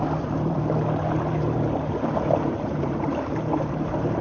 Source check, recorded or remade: remade